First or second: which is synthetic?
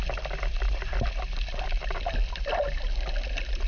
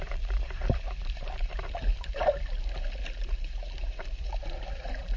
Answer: second